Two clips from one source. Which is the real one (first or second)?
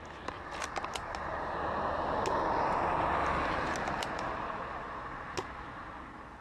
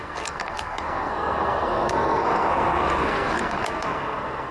first